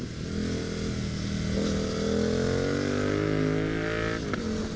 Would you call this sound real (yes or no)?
yes